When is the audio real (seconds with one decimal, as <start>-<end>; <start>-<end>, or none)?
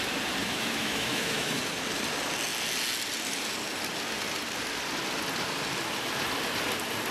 0.0-0.4; 1.6-7.1